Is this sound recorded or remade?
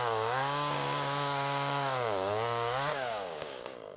remade